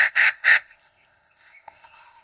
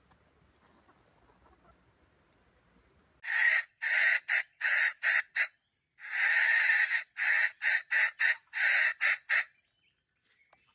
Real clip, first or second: second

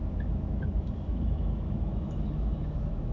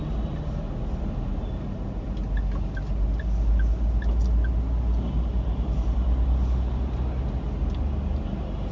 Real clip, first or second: second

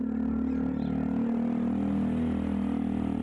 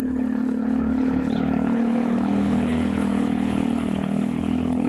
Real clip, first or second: first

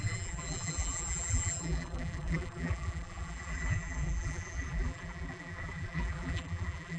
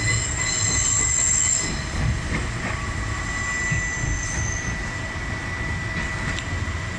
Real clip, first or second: second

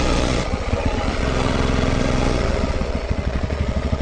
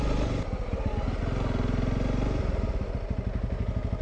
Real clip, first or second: second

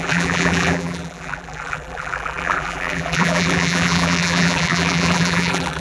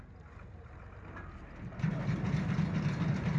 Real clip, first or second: second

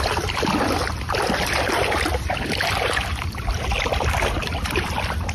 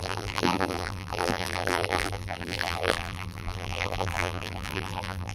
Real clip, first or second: first